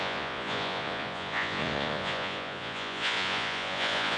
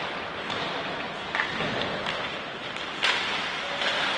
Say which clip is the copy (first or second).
first